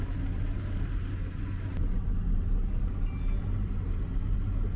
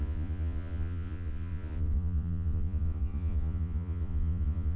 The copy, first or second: second